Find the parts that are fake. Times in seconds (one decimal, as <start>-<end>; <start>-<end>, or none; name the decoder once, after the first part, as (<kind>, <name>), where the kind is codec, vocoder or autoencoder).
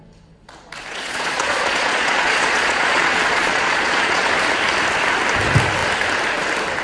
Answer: 0.9-4.3 (vocoder, Vocos)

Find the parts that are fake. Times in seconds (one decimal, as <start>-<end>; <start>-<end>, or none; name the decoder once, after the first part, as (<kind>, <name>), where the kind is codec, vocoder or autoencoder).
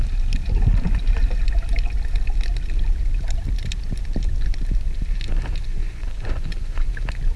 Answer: 5.7-6.9 (vocoder, Vocos)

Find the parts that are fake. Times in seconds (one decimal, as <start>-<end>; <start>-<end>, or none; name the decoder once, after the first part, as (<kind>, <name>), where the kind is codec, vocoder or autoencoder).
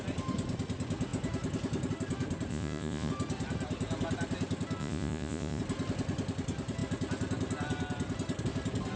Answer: 2.5-3.1 (vocoder, Vocos); 4.8-5.6